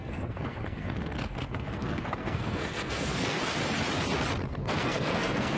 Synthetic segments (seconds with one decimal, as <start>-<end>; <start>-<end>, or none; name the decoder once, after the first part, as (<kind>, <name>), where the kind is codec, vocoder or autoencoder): 0.0-3.4 (codec, SNAC); 4.6-5.6